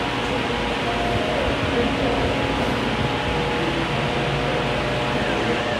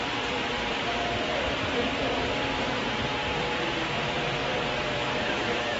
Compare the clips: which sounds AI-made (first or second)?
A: second